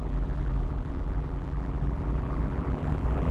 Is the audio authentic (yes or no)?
no